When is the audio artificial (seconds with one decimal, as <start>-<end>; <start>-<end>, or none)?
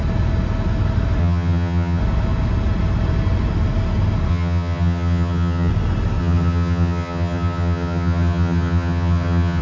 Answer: 1.2-2.0; 4.3-5.7; 6.2-9.6